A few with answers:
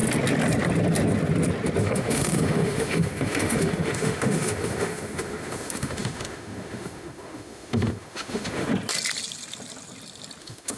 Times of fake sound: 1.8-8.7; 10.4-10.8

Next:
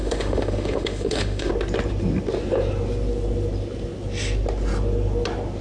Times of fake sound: 0.0-1.5